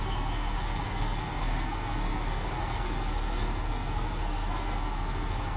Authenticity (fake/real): fake